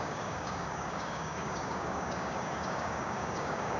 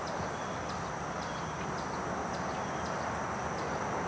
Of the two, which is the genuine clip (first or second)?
second